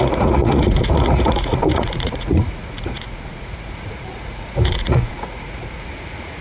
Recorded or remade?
remade